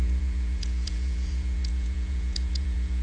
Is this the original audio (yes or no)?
no